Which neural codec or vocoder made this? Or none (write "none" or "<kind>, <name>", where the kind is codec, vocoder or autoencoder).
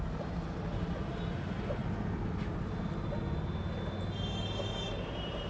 none